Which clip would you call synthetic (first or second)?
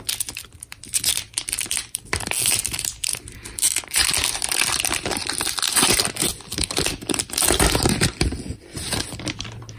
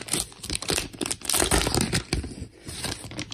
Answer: first